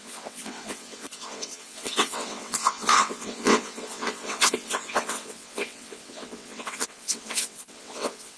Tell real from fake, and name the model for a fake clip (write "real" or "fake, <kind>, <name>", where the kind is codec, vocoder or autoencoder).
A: fake, vocoder, WaveNeXt